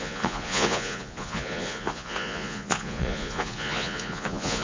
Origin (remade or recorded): remade